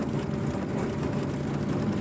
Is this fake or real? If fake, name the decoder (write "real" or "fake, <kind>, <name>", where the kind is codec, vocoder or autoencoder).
real